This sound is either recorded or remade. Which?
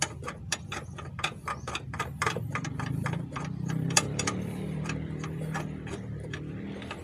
remade